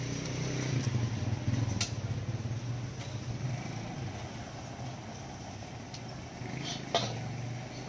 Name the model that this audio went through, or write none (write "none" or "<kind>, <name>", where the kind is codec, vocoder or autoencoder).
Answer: none